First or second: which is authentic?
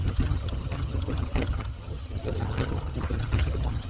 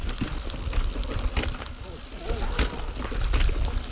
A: second